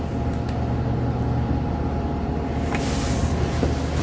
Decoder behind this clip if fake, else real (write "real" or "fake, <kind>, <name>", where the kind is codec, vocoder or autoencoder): real